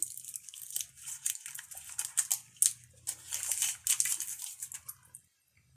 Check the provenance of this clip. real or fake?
real